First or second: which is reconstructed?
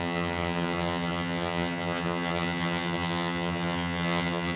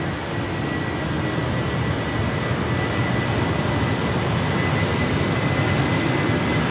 first